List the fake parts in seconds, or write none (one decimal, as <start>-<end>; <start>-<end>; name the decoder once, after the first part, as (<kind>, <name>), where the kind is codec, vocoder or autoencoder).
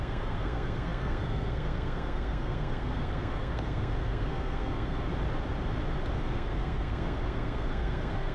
0.0-5.1 (codec, SNAC); 6.1-8.3